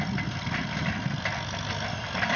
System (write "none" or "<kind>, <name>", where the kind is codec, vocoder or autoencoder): none